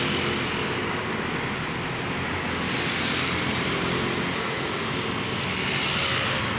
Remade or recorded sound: recorded